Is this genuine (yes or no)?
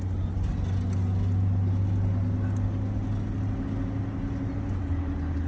yes